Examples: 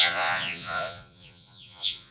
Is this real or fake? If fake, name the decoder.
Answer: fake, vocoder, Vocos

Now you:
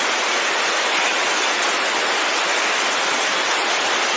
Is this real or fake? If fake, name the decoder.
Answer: real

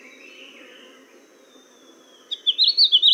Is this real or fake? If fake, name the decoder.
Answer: real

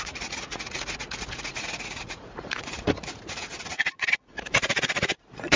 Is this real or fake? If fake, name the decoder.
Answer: fake, vocoder, Vocos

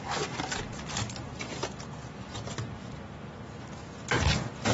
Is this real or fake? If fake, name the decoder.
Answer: real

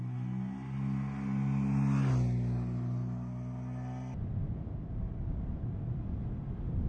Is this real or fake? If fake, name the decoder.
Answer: real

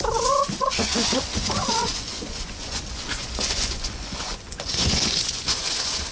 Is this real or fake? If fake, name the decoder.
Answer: fake, vocoder, Vocos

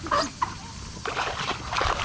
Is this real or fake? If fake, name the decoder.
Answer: real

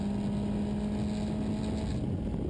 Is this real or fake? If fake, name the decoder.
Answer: real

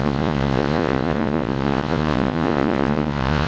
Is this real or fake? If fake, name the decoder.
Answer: fake, vocoder, Vocos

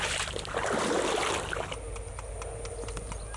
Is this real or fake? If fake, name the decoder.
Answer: real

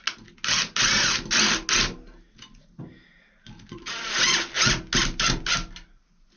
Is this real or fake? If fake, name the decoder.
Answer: real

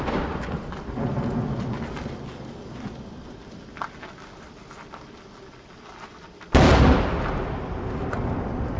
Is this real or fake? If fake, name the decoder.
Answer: real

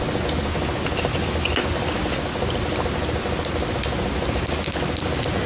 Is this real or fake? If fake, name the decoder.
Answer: real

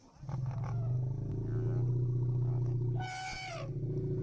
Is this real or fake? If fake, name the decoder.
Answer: real